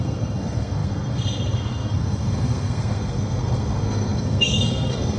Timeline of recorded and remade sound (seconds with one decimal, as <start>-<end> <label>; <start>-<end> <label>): 0.0-5.2 remade

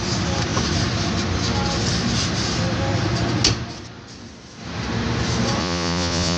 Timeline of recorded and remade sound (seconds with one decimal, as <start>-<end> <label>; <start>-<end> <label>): 0.0-5.6 recorded; 5.6-6.4 remade

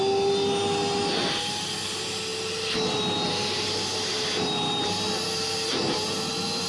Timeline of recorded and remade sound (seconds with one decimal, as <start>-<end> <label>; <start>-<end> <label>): 0.0-6.7 recorded

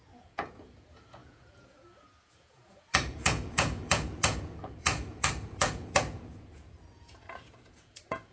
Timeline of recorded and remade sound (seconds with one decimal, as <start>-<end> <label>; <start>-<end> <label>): 0.0-8.3 remade

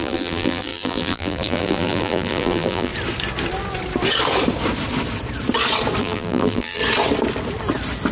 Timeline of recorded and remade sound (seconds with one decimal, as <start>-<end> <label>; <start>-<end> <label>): 0.0-2.9 remade; 2.9-6.0 recorded; 6.0-6.8 remade; 6.8-8.1 recorded

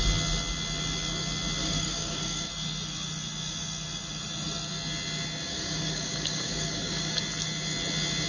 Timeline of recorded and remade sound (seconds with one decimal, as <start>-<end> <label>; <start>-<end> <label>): 0.0-1.6 recorded; 1.6-2.5 remade; 2.5-5.5 recorded; 5.5-7.2 remade; 7.2-8.3 recorded

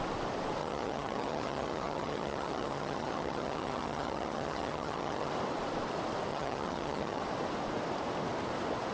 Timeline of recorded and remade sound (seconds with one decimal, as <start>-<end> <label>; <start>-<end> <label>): 0.0-0.6 recorded; 0.6-5.3 remade; 5.3-6.3 recorded; 6.3-7.2 remade; 7.2-8.9 recorded